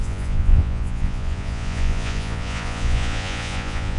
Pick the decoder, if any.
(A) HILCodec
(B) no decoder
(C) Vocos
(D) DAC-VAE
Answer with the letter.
C